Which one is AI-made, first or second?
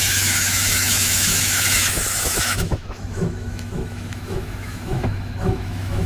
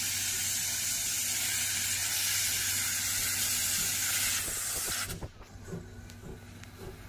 first